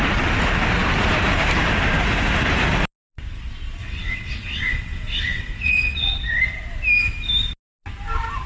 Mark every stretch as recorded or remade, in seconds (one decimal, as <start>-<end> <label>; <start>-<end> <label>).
0.0-3.8 recorded; 3.8-6.1 remade; 6.1-8.5 recorded